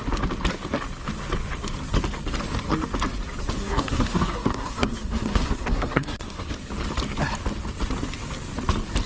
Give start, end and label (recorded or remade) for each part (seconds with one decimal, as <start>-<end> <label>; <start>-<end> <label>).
0.0-3.6 recorded; 3.6-6.5 remade; 6.5-9.1 recorded